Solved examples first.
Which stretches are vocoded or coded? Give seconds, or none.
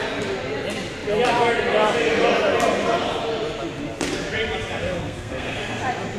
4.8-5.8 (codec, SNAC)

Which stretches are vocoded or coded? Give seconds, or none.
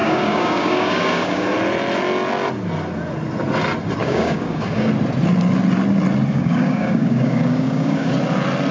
0.0-1.5 (codec, DAC); 4.0-4.9; 6.3-8.1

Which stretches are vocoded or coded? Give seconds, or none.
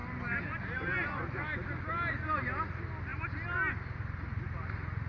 none